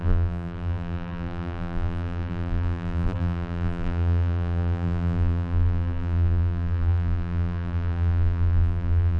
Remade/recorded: remade